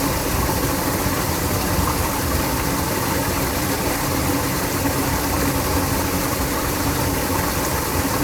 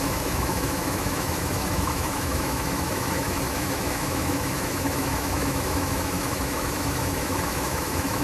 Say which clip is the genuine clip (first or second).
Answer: first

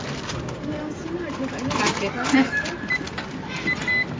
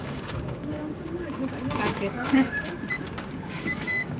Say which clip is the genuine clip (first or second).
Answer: first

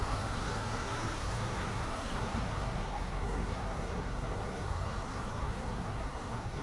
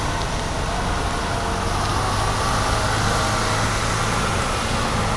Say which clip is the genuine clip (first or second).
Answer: second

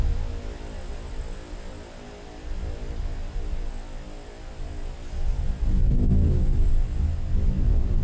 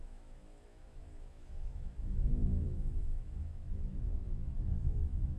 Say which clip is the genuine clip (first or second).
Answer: first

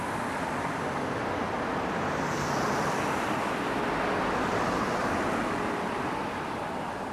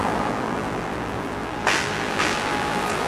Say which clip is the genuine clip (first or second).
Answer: first